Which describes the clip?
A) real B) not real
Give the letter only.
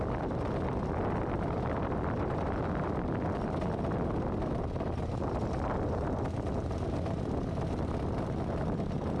B